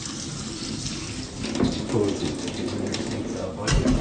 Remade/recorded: recorded